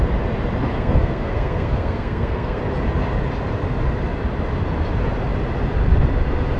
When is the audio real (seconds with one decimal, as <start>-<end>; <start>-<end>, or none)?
0.0-0.7; 2.6-6.6